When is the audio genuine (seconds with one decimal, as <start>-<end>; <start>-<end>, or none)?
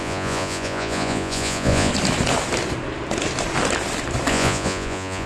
1.9-4.3